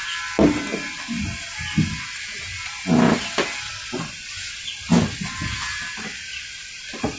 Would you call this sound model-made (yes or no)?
no